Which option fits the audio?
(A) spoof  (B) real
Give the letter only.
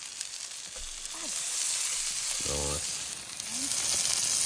B